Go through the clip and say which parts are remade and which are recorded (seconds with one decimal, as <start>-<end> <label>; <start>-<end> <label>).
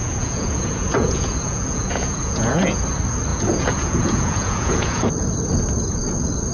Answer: 0.0-2.8 remade; 2.8-3.3 recorded; 3.3-5.1 remade; 5.1-6.5 recorded